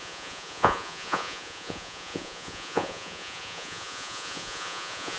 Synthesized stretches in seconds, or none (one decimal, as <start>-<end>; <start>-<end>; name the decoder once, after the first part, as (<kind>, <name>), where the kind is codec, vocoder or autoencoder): 0.0-5.2 (vocoder, Vocos)